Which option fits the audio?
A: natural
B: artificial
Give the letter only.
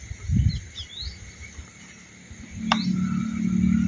A